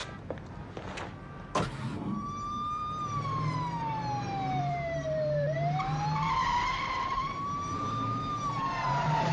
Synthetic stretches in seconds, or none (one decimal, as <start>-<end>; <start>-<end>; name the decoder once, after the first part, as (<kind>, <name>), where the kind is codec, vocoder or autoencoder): 1.1-2.8 (vocoder, BigVGAN v2); 4.6-9.3